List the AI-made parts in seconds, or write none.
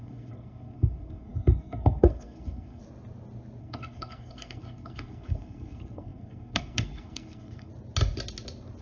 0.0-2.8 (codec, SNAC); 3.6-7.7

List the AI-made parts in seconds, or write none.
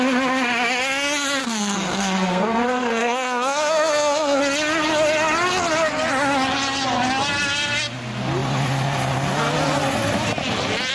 1.4-4.4 (codec, SNAC)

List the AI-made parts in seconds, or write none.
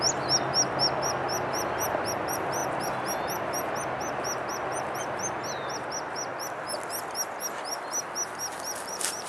none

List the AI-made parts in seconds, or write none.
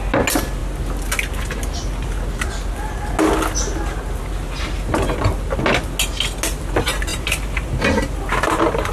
7.1-8.9 (vocoder, BigVGAN v2)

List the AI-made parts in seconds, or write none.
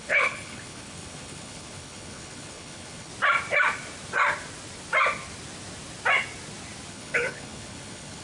0.0-3.1 (codec, HILCodec); 6.9-8.2